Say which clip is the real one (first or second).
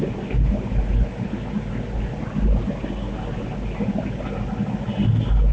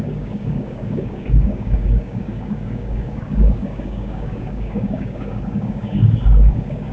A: first